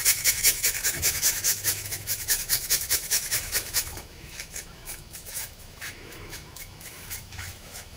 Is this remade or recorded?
remade